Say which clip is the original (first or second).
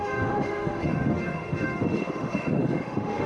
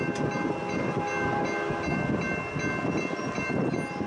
second